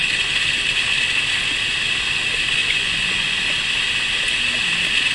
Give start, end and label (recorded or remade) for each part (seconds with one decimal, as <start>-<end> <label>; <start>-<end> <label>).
0.0-2.6 recorded; 2.6-3.4 remade; 3.4-5.1 recorded